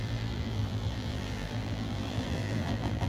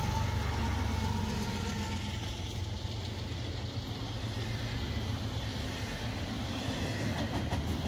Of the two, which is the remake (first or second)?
first